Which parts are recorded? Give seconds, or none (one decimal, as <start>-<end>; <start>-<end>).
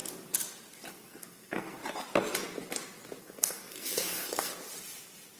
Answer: 0.0-0.9; 1.8-3.2; 4.5-5.4